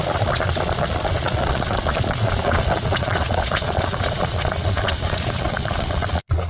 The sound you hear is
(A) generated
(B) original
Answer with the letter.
A